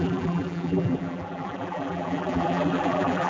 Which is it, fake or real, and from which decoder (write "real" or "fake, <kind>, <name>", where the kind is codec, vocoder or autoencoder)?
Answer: fake, vocoder, BigVGAN v2